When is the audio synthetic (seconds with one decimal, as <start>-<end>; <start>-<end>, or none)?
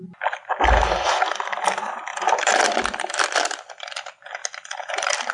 2.1-3.7; 4.4-5.3